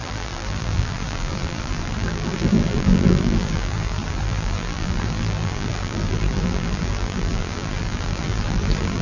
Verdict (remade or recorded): remade